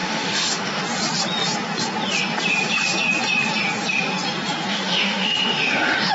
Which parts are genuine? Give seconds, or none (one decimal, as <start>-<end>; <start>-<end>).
0.8-4.7